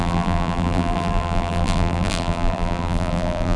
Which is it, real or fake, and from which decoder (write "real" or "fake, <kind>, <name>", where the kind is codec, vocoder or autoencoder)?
fake, vocoder, BigVGAN v2